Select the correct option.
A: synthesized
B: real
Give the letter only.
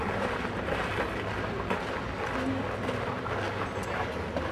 B